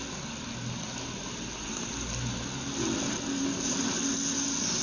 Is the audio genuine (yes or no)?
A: yes